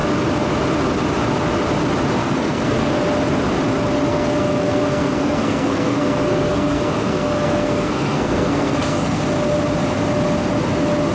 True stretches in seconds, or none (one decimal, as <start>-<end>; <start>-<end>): 0.0-2.2; 3.0-4.1; 9.2-11.1